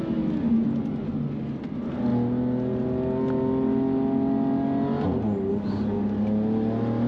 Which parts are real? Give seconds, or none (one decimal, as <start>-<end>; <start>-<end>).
0.0-7.1